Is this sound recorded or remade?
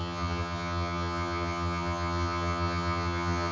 remade